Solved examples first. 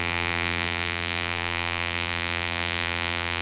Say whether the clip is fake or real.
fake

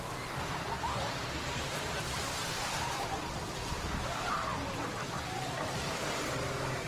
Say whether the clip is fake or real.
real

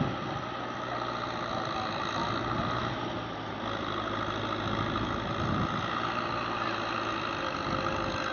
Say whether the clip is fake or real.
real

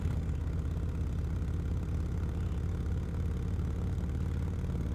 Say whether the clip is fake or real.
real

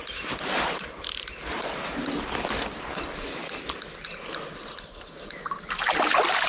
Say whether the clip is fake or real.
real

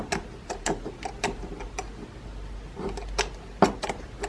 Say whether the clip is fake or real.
real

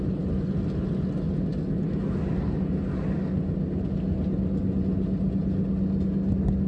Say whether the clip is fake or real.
real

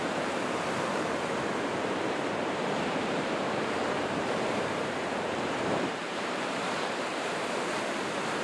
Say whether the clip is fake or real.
fake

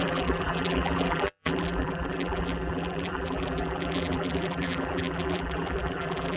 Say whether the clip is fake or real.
fake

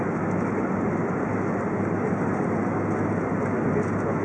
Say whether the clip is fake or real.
real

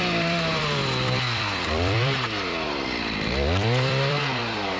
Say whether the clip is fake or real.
fake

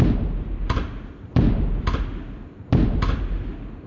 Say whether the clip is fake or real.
real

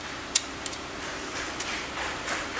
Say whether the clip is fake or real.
real